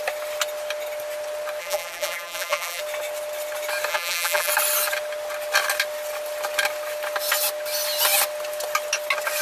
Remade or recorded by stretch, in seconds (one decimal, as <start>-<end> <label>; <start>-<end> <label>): 0.0-1.6 recorded; 1.6-2.8 remade; 2.8-3.9 recorded; 3.9-4.5 remade; 4.5-9.4 recorded